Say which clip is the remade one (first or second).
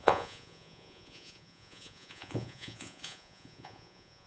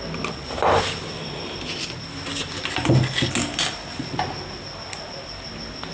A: first